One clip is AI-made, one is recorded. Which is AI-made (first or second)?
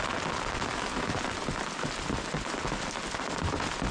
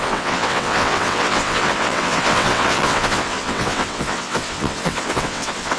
second